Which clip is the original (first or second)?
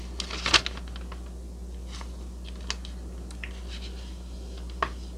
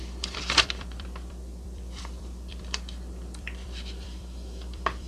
first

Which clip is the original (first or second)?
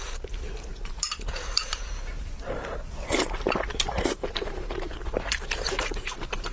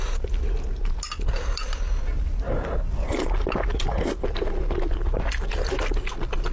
second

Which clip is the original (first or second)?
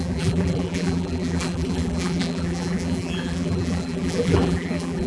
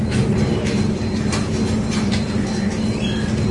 second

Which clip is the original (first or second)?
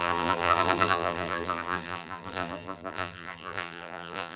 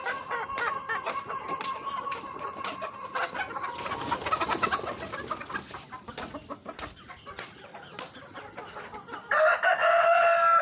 second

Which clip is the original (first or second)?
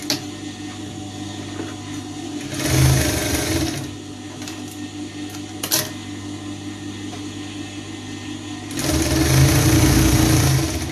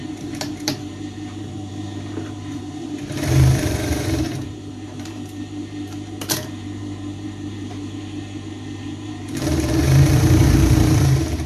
first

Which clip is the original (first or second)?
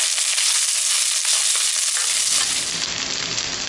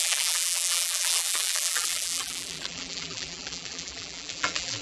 first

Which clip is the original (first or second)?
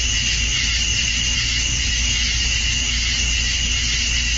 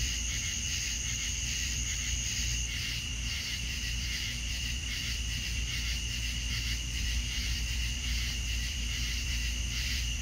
first